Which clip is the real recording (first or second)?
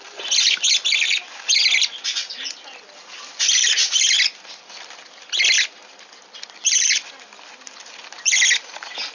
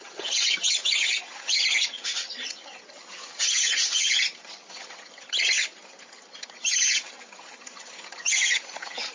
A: first